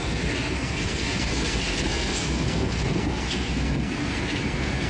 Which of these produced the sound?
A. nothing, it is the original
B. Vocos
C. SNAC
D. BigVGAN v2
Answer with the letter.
C